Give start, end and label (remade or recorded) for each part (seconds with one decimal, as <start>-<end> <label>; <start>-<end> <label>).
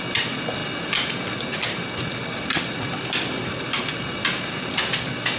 0.0-5.4 remade